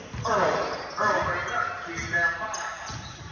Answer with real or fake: real